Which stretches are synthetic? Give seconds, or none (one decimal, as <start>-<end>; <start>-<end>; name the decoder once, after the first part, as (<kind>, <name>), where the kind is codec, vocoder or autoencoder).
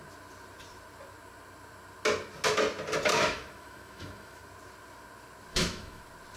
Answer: 3.1-4.4 (autoencoder, DAC-VAE); 5.5-6.0